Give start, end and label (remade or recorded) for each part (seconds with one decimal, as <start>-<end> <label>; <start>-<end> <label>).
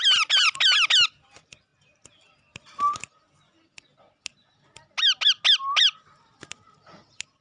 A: 0.0-7.4 recorded